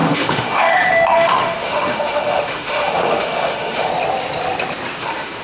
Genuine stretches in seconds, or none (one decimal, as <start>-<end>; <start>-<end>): 3.9-5.0